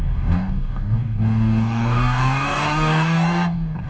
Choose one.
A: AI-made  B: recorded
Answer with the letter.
A